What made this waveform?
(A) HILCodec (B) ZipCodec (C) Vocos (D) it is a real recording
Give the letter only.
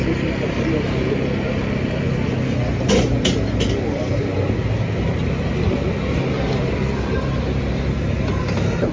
D